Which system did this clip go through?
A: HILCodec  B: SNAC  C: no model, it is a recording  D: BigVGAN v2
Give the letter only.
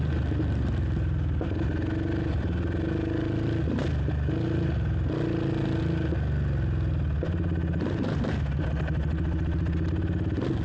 C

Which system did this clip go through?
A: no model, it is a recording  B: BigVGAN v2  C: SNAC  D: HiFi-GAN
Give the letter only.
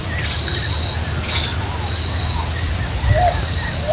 A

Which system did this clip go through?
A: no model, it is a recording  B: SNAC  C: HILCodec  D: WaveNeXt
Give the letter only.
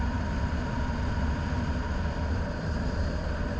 A